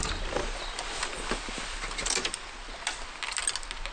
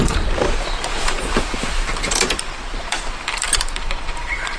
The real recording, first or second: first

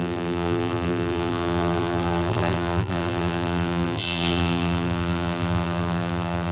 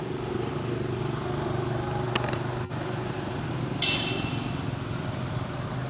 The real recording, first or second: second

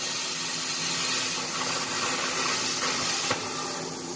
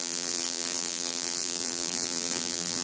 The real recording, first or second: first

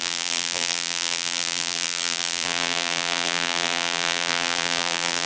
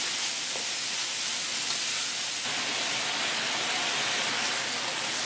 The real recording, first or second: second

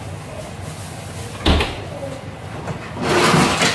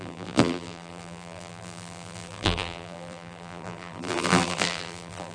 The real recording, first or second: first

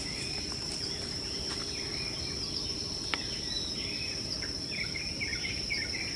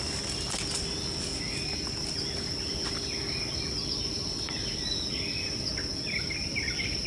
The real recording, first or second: second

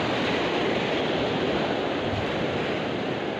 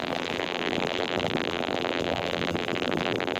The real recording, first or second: first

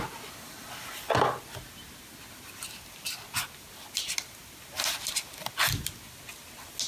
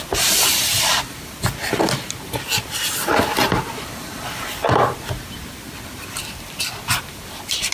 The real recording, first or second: first